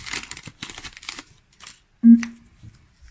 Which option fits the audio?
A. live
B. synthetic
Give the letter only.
A